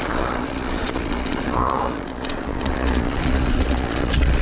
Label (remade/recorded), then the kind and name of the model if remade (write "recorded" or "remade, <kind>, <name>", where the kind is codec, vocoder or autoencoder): remade, vocoder, Vocos